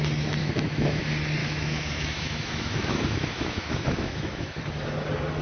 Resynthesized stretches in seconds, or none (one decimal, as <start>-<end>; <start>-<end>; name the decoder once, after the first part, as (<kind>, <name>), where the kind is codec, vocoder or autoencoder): 0.4-1.0 (autoencoder, DAC-VAE); 1.4-4.6

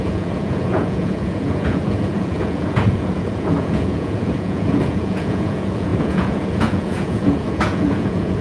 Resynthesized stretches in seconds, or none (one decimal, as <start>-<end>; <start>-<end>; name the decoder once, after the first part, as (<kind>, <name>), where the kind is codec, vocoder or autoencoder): 0.0-8.4 (vocoder, Vocos)

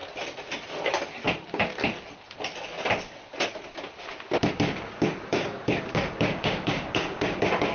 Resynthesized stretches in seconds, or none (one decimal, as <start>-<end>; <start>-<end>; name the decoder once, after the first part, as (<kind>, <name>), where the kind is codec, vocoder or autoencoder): 4.5-7.7 (codec, DAC)

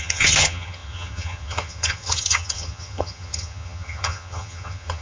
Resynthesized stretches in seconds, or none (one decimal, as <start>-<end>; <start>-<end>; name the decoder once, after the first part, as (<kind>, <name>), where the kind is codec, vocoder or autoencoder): 0.0-5.0 (vocoder, HiFi-GAN)

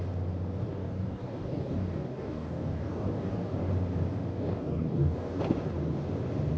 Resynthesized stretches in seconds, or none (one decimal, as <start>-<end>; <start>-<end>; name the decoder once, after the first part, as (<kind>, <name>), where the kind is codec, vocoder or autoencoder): 0.7-3.7 (codec, DAC); 4.3-5.4